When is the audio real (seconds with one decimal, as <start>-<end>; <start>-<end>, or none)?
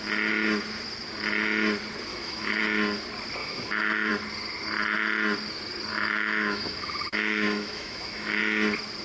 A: 0.0-2.1; 2.6-3.4; 4.1-5.9; 8.4-9.0